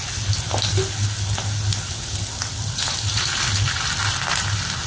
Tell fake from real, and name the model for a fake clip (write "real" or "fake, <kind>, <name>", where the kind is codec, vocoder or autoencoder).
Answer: real